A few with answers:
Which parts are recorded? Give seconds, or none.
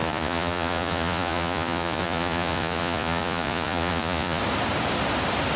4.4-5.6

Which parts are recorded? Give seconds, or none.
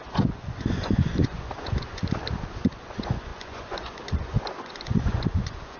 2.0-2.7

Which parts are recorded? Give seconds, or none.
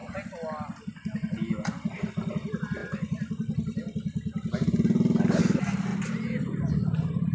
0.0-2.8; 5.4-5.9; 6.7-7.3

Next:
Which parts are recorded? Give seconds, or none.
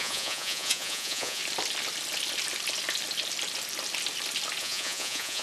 1.4-4.6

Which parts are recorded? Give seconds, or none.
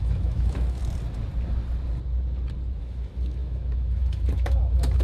0.8-2.8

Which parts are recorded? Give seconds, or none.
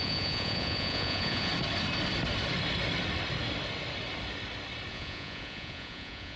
1.5-4.9